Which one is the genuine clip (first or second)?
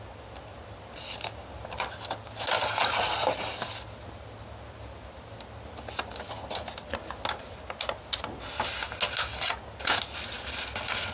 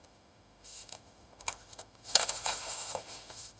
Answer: first